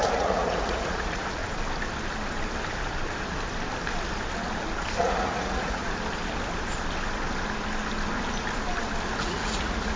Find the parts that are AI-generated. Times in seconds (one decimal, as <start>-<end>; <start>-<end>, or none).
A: 0.0-1.4; 5.0-5.8; 9.2-10.0